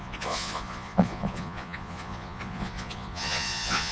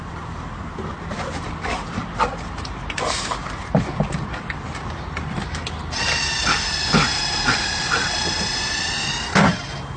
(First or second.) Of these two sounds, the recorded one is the second